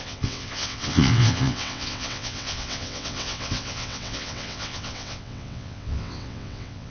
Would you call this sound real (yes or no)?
no